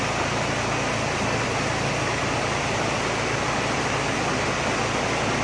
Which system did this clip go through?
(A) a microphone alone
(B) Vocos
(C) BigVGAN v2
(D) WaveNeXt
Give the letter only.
A